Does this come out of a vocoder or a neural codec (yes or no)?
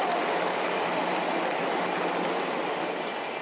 no